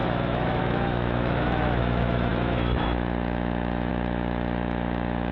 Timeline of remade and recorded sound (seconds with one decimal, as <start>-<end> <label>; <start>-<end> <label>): 0.0-5.3 remade